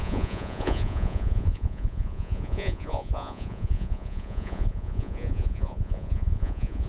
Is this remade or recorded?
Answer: remade